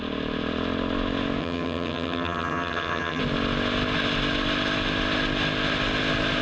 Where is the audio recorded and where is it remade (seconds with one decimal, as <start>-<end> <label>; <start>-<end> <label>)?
0.0-1.4 recorded; 1.4-3.2 remade; 3.2-6.4 recorded